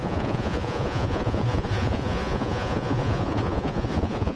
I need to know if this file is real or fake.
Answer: fake